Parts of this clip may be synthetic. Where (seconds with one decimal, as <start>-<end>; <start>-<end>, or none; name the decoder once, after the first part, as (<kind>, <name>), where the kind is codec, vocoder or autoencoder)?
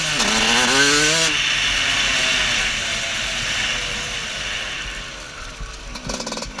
none